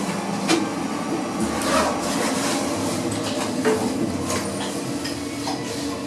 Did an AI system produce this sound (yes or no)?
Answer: no